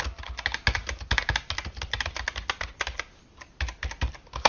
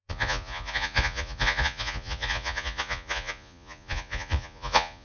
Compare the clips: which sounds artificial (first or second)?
second